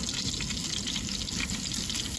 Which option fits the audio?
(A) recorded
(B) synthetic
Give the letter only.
A